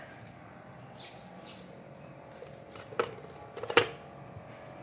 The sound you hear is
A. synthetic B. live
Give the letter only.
B